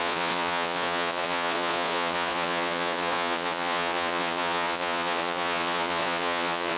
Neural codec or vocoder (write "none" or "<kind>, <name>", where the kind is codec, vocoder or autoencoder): vocoder, Vocos